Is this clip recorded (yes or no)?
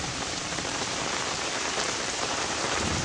no